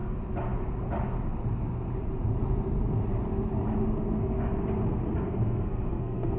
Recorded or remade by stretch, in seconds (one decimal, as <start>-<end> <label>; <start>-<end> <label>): 0.0-5.2 recorded; 5.2-6.4 remade